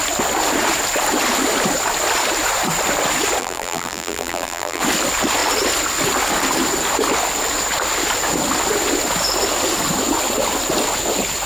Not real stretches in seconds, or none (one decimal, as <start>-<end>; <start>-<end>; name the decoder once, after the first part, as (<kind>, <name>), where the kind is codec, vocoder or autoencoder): 3.4-4.8 (vocoder, BigVGAN v2)